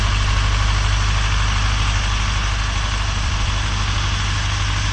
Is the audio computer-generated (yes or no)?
no